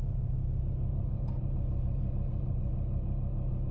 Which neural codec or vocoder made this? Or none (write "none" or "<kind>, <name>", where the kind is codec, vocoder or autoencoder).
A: vocoder, Vocos